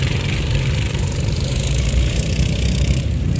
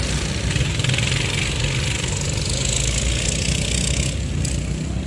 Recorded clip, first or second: second